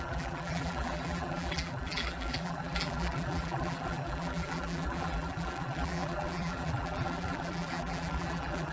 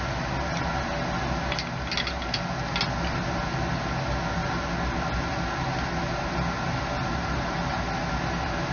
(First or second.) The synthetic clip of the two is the first